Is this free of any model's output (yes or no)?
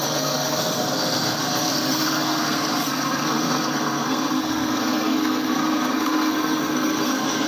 no